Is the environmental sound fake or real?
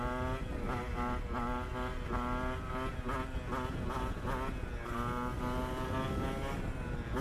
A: real